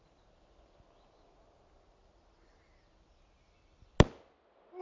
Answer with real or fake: real